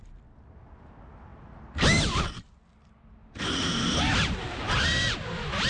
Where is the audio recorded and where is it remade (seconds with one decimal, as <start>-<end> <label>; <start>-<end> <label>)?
0.0-5.7 recorded